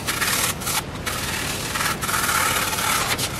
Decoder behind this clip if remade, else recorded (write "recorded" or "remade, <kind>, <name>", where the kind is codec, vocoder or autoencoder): recorded